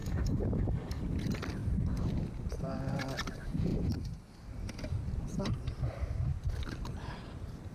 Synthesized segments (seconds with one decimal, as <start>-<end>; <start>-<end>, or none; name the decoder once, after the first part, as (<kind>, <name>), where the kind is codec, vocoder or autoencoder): 0.0-1.0 (codec, DAC)